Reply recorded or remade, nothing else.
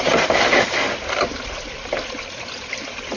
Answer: recorded